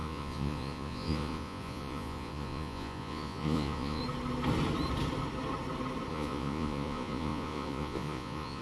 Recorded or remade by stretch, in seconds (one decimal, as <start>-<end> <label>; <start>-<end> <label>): 0.0-4.0 remade; 4.0-6.1 recorded; 6.1-8.6 remade